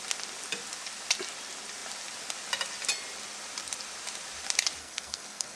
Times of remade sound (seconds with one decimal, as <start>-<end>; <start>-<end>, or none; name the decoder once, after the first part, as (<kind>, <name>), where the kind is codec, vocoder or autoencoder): 4.8-5.6 (codec, SNAC)